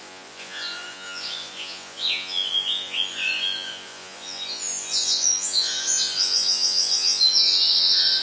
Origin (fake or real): fake